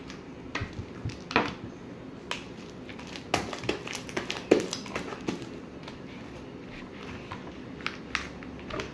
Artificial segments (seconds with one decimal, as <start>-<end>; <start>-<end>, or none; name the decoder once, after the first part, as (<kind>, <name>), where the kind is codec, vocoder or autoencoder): none